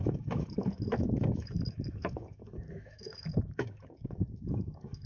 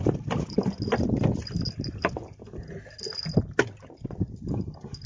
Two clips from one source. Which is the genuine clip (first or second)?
second